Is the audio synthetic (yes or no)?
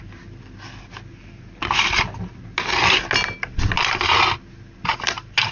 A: no